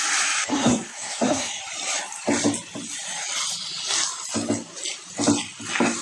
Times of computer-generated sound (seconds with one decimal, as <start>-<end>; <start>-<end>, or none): 0.5-1.6